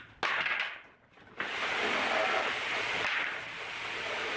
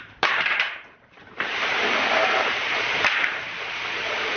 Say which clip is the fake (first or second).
second